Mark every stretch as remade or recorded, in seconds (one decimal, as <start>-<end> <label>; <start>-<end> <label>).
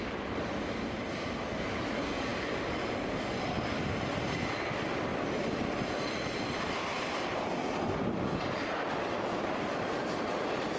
0.0-10.8 remade